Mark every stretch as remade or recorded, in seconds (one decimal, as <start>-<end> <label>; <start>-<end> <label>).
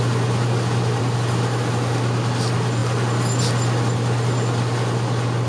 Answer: 0.0-5.5 recorded